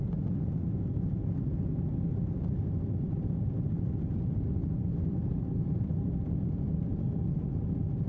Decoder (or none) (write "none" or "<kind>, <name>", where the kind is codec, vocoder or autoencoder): none